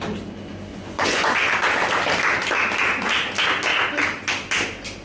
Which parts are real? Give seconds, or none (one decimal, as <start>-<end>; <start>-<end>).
0.0-0.7; 1.4-5.0